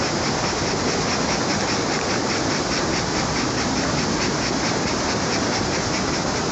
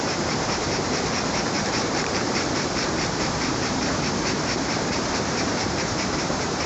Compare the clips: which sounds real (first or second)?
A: first